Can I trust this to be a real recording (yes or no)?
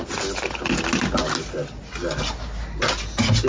yes